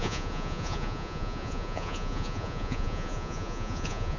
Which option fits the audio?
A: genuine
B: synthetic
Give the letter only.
B